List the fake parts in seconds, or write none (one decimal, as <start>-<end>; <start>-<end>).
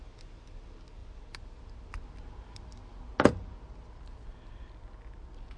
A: none